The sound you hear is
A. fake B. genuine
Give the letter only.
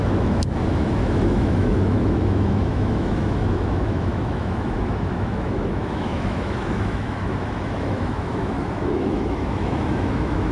A